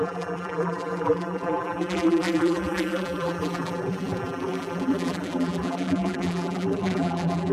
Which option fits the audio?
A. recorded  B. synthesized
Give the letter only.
B